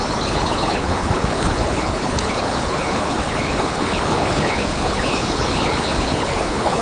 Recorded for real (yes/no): no